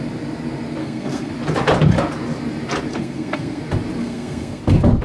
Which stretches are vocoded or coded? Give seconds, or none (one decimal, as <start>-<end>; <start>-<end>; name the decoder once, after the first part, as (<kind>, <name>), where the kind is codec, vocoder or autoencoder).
0.8-1.3 (codec, SNAC); 2.9-3.6; 4.0-4.6